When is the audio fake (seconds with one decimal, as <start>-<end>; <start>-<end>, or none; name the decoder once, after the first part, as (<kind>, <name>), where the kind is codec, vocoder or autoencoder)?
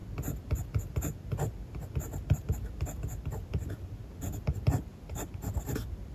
none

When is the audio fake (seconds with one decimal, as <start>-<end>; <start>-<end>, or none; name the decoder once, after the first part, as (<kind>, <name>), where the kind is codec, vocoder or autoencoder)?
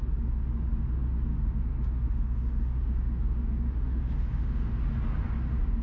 1.3-4.8 (autoencoder, DAC-VAE)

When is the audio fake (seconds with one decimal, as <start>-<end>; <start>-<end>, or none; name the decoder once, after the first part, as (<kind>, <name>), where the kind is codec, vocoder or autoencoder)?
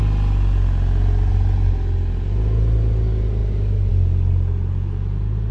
none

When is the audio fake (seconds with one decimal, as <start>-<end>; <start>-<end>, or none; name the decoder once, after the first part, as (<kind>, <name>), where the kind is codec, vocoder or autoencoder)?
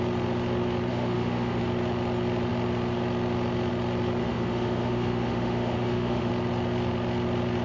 0.9-1.6 (autoencoder, DAC-VAE); 4.2-6.3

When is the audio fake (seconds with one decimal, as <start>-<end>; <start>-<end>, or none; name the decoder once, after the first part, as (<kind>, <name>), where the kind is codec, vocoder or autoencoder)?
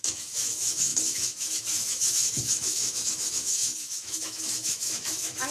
0.0-5.5 (autoencoder, DAC-VAE)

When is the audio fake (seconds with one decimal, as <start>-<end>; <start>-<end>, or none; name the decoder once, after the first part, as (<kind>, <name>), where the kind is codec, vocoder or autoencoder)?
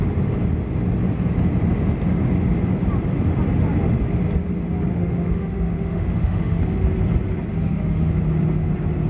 4.9-6.6 (autoencoder, DAC-VAE); 7.5-8.1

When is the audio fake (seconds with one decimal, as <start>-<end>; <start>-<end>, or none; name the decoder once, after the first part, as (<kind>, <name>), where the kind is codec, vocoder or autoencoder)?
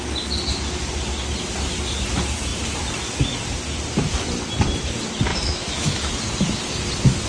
5.3-6.1 (autoencoder, DAC-VAE)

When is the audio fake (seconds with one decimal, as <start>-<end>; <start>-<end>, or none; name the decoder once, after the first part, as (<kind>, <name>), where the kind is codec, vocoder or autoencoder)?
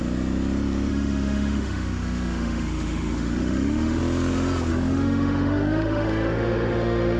0.9-4.0 (autoencoder, DAC-VAE); 4.7-7.2